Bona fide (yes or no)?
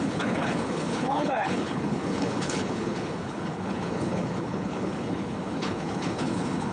no